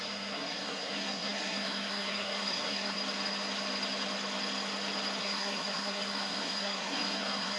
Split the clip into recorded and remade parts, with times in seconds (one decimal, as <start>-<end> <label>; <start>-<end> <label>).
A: 0.0-3.0 remade; 3.0-5.2 recorded; 5.2-7.6 remade